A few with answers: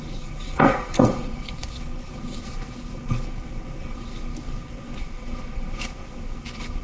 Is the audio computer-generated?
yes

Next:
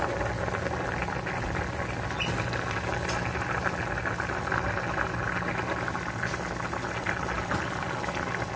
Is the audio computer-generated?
no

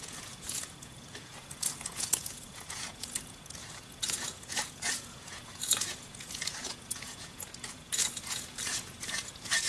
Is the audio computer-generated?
yes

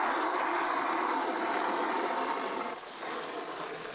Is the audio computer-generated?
no